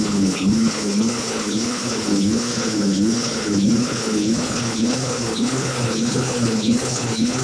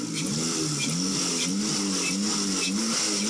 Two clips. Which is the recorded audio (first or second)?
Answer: second